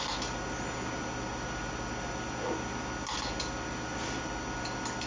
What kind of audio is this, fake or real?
real